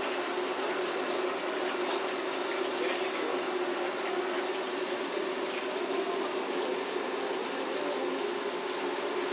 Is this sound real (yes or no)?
yes